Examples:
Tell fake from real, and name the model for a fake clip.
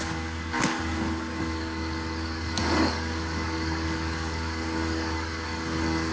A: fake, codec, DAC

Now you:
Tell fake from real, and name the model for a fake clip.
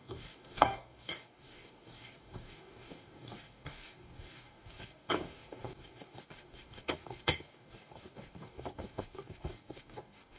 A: fake, codec, DAC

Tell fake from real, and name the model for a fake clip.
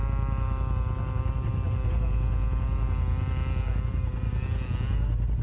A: real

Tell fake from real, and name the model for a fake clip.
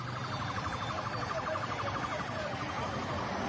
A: real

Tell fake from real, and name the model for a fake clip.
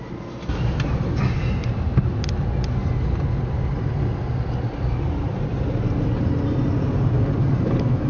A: real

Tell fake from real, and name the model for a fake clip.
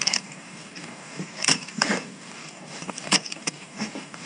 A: fake, codec, DAC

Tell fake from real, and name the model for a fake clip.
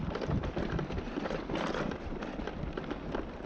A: real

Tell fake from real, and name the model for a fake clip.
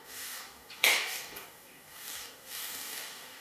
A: fake, codec, DAC